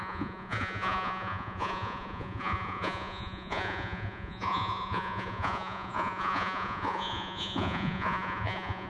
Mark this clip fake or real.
fake